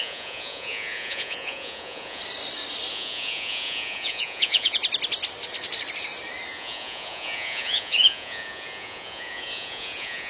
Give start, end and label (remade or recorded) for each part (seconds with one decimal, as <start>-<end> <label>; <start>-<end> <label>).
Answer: 0.0-2.2 remade; 2.2-2.9 recorded; 2.9-4.8 remade; 4.8-6.5 recorded; 6.5-10.3 remade